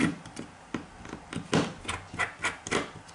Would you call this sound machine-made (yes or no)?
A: no